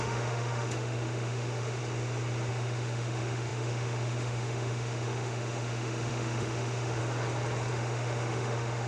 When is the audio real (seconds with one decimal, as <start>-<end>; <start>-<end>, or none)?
1.8-2.5; 7.0-7.7